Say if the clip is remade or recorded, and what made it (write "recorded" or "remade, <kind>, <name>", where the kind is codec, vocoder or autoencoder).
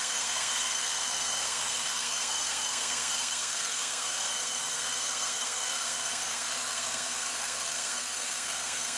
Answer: remade, codec, SNAC